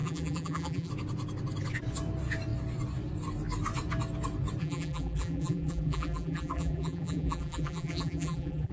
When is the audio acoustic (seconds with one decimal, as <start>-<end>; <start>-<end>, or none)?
0.9-4.6